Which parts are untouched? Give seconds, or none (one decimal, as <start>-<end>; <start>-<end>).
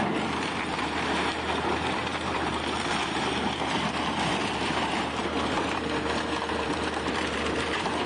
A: none